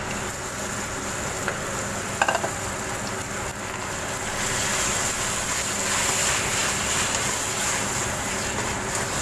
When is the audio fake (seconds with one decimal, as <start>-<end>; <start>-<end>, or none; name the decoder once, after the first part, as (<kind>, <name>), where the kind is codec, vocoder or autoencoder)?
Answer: none